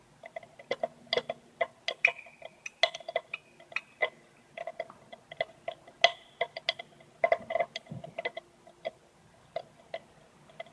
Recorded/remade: recorded